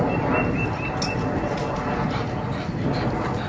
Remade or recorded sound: recorded